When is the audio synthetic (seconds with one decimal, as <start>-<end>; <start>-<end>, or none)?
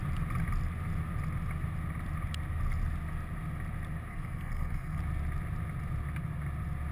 4.1-5.0